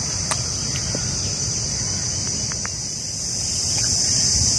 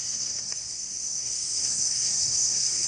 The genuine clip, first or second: first